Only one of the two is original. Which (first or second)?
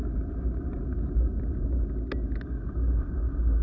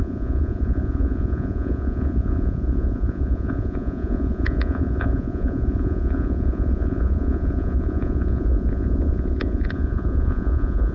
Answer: first